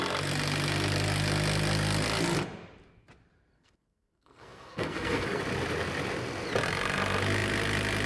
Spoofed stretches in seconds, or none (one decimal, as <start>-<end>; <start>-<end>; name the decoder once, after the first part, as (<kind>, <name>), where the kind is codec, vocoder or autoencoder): 3.5-5.4 (codec, SNAC)

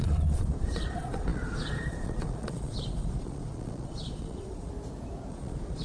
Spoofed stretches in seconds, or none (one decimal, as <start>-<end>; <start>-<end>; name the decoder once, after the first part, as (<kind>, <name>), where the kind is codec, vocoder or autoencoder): 0.0-4.7 (vocoder, Vocos); 5.3-5.8

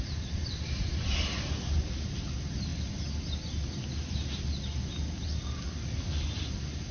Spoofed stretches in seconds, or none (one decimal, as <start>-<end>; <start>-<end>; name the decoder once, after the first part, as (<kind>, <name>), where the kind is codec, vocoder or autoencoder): none

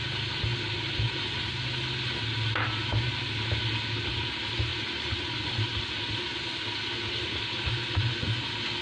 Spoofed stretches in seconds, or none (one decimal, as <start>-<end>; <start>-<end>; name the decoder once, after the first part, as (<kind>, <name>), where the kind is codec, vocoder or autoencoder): none